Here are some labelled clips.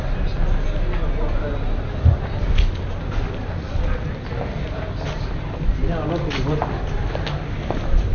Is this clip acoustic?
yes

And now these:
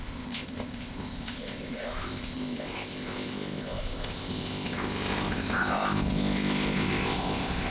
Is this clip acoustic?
no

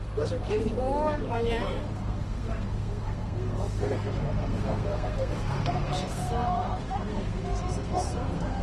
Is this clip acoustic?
no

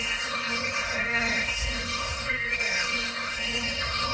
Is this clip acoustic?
no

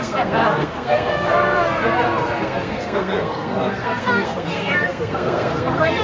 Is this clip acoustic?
no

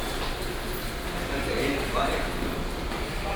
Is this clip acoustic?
yes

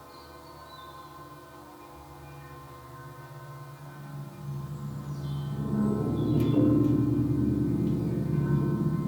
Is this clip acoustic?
yes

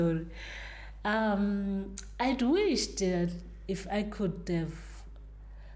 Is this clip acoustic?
yes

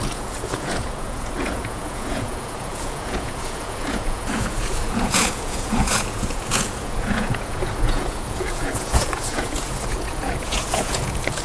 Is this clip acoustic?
no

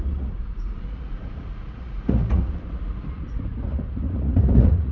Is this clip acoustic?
no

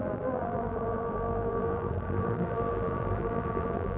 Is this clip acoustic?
no